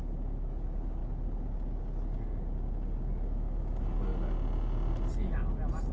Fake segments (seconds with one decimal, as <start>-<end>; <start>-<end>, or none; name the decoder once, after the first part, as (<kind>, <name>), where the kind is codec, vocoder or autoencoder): 0.0-1.0 (autoencoder, DAC-VAE); 3.1-4.1